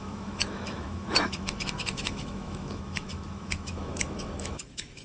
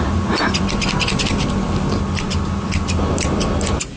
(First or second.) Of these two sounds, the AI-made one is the first